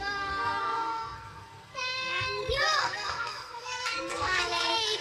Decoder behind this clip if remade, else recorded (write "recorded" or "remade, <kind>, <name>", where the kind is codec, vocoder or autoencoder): remade, codec, SNAC